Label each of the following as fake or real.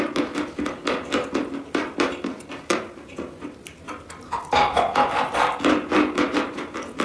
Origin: real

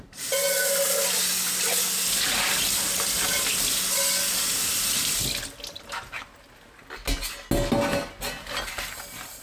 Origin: real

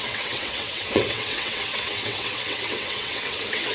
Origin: fake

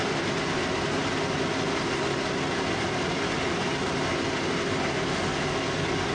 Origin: real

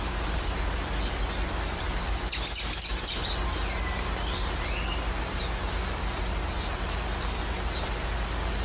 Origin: real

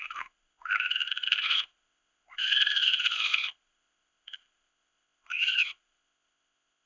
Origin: fake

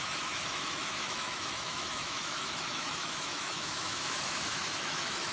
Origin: fake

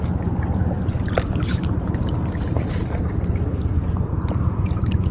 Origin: real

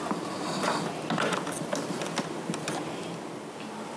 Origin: real